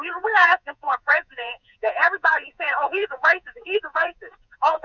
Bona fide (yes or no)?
no